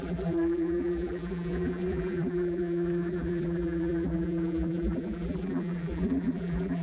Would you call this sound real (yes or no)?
no